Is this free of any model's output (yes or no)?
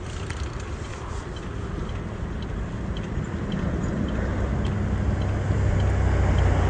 yes